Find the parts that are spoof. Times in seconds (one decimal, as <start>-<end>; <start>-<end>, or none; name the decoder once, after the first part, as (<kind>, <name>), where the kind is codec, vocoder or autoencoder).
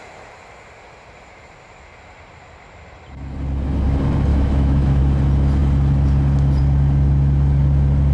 4.3-5.0 (autoencoder, DAC-VAE)